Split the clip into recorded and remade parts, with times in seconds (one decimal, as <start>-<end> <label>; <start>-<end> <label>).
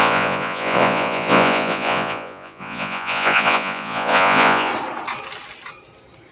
0.0-4.7 remade; 4.7-6.3 recorded